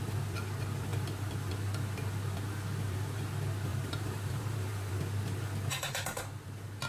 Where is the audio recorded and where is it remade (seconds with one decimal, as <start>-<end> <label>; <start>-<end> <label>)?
0.0-3.7 recorded; 3.7-4.9 remade; 4.9-6.9 recorded